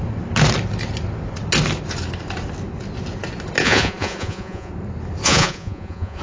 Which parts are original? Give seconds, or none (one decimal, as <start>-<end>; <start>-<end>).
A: 0.0-3.6; 4.7-5.2